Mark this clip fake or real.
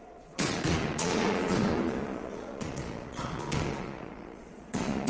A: fake